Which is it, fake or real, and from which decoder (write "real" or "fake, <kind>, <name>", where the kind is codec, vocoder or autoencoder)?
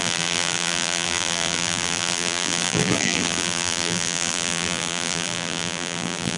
fake, vocoder, BigVGAN v2